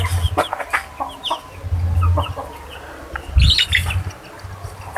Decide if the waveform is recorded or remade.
recorded